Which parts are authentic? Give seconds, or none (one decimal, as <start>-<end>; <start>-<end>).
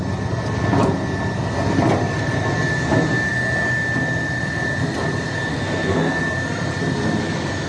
0.0-5.5; 6.2-7.7